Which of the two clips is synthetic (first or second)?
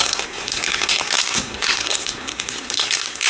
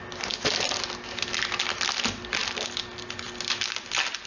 first